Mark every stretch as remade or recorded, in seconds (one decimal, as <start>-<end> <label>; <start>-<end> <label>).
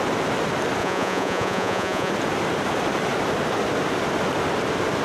0.0-0.8 recorded; 0.8-2.1 remade; 2.1-5.0 recorded